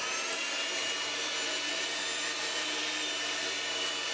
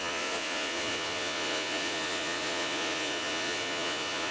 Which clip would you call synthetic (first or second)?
second